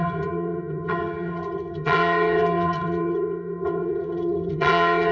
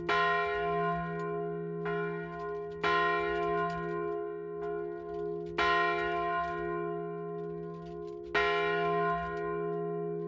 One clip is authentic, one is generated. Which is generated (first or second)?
first